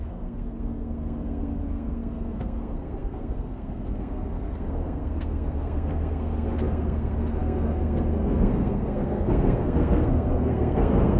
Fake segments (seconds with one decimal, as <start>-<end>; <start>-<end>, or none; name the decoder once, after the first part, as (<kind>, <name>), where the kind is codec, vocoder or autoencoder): 0.0-11.2 (codec, SNAC)